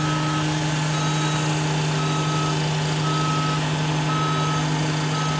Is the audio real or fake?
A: real